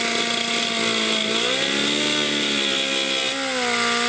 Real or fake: real